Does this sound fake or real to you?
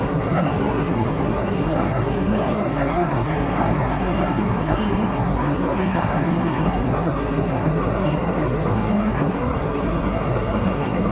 fake